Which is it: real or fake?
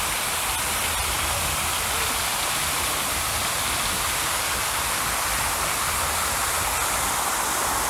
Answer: real